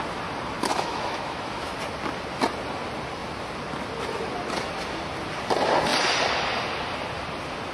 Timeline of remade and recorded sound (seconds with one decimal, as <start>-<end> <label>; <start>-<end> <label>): 0.0-0.7 recorded; 0.7-1.8 remade; 1.8-7.7 recorded